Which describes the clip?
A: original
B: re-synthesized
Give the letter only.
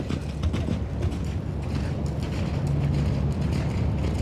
A